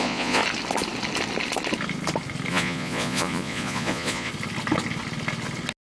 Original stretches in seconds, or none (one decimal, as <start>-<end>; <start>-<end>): 0.4-2.5; 4.3-5.8